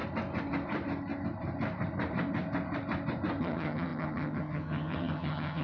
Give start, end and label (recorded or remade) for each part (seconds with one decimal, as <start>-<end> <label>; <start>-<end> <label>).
0.0-3.4 recorded; 3.4-5.6 remade